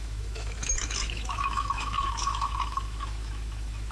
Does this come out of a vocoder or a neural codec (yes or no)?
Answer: yes